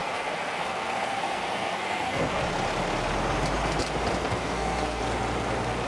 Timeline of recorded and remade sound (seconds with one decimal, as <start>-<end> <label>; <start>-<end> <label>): 0.0-2.4 remade; 2.4-4.2 recorded; 4.2-5.0 remade; 5.0-5.9 recorded